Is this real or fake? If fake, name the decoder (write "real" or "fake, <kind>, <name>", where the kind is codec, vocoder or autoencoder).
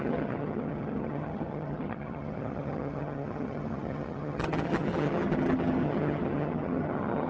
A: fake, vocoder, HiFi-GAN